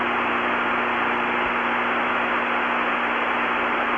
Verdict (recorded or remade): recorded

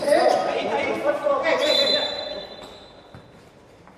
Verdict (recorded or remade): remade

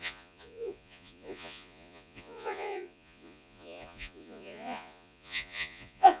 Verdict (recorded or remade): remade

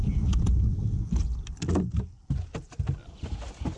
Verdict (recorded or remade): recorded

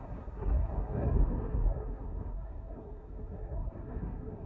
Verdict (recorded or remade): remade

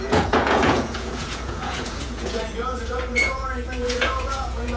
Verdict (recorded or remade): remade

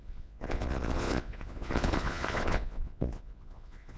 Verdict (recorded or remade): remade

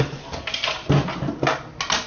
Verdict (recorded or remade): recorded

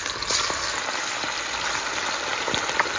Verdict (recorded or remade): recorded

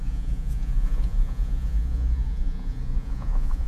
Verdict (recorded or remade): remade